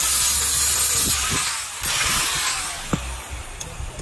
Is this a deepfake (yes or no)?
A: no